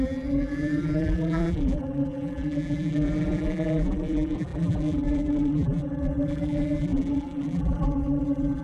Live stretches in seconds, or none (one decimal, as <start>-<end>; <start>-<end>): none